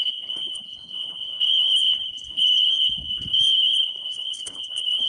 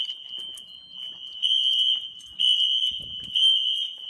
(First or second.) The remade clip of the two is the first